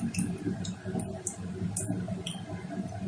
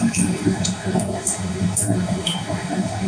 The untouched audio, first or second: first